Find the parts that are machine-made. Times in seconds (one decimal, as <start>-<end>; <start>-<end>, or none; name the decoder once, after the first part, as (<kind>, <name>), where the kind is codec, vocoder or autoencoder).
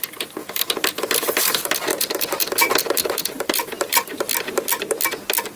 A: 0.4-1.5 (vocoder, BigVGAN v2); 1.9-4.3